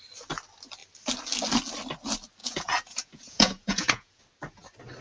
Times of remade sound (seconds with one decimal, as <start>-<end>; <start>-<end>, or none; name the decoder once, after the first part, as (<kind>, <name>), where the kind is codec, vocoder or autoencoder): 2.4-4.2 (vocoder, Vocos)